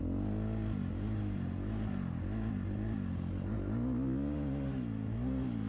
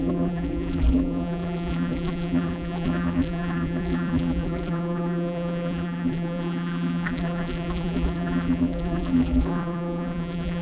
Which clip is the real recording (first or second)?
first